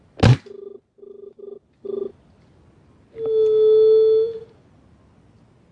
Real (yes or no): yes